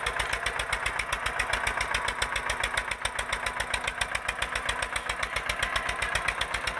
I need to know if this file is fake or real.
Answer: real